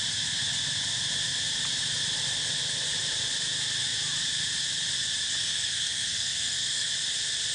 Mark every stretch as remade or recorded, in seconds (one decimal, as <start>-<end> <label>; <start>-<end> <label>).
0.0-5.4 recorded; 5.4-6.9 remade; 6.9-7.5 recorded